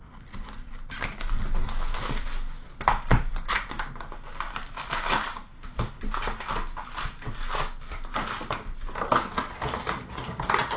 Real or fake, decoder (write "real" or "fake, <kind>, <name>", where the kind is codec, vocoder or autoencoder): real